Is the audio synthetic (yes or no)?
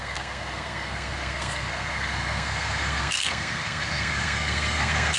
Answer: yes